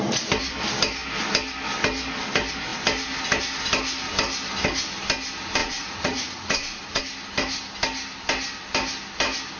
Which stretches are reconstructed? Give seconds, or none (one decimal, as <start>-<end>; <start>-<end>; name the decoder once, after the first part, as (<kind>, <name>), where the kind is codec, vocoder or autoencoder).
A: 5.6-7.0 (vocoder, Vocos)